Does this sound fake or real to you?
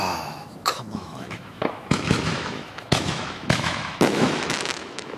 fake